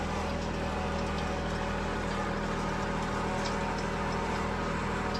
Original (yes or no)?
yes